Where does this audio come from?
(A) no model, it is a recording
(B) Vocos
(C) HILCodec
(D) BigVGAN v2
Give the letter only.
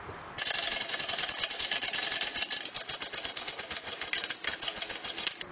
A